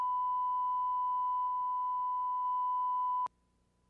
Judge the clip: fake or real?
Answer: real